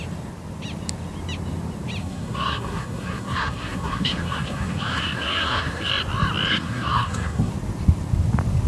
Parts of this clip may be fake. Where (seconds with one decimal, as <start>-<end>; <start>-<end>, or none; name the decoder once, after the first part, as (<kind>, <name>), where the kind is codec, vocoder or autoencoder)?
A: 2.0-5.9 (codec, SNAC); 6.5-7.5